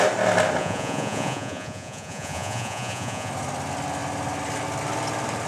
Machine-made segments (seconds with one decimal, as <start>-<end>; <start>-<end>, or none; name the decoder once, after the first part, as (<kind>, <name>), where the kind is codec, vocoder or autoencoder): 0.6-3.3 (vocoder, Vocos)